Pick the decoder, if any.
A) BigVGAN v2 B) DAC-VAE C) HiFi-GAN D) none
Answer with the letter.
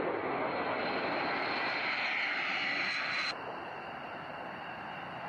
D